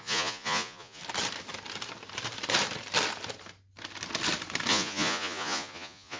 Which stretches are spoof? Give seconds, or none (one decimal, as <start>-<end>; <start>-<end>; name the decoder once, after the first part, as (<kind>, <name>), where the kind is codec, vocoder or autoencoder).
0.0-1.0 (vocoder, Vocos); 4.7-6.2